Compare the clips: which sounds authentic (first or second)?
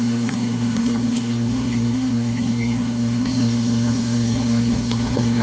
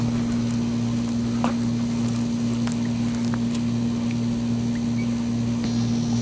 second